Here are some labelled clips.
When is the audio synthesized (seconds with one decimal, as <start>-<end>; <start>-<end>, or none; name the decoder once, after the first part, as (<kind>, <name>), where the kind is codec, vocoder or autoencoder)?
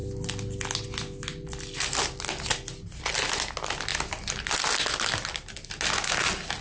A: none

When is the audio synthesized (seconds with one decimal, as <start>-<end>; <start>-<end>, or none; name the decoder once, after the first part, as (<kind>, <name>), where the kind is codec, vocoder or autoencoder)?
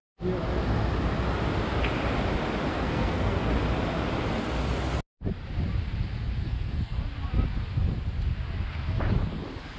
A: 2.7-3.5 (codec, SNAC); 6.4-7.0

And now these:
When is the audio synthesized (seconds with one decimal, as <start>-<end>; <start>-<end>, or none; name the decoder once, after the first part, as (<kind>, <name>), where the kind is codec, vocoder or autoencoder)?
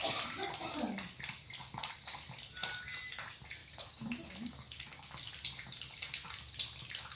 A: 3.6-5.3 (codec, DAC)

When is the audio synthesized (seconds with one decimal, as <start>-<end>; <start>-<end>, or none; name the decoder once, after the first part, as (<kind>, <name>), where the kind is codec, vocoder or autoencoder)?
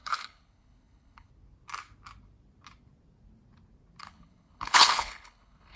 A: 0.0-1.3 (codec, HILCodec); 4.0-5.8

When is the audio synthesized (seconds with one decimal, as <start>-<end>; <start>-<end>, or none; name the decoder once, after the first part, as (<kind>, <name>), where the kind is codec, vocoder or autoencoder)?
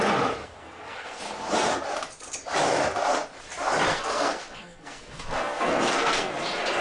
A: 0.4-1.2 (codec, SNAC); 3.9-6.3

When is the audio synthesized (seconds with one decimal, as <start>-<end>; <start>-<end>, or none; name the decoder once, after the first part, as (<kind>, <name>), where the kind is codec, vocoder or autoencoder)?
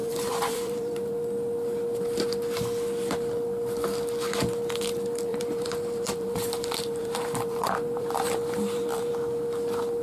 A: 0.0-1.1 (vocoder, BigVGAN v2); 5.3-9.1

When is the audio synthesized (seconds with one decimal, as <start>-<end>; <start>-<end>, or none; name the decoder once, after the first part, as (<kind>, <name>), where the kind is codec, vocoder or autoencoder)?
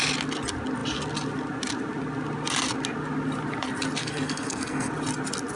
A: 4.0-4.9 (codec, SNAC)